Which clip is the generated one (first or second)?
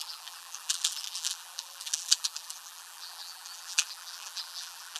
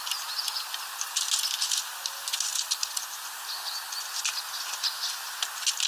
first